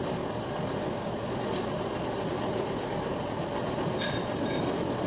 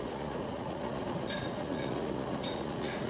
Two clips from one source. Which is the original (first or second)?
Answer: first